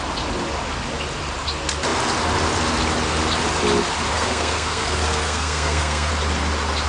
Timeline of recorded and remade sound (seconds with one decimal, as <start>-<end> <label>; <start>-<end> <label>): 0.0-4.1 recorded; 4.1-6.1 remade; 6.1-6.9 recorded